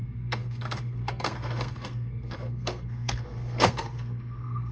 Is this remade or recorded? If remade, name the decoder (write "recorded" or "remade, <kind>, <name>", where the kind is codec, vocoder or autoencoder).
remade, codec, SNAC